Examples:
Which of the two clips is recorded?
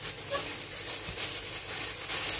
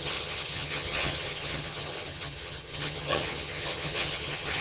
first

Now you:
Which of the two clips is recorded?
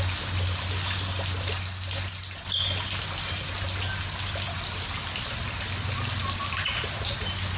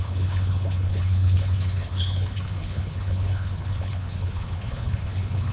first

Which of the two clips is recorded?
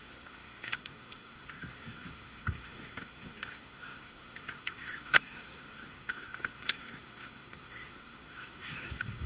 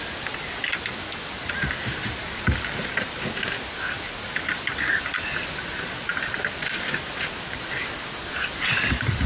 second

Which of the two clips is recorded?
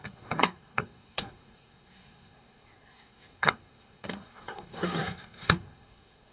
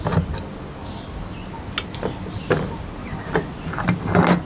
second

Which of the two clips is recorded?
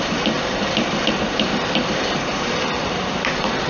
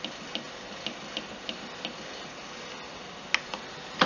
second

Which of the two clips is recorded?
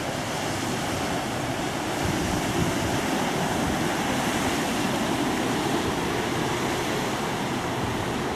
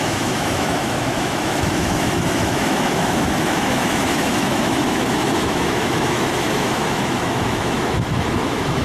first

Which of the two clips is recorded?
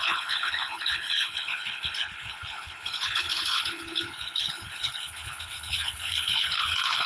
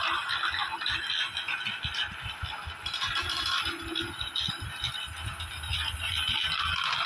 second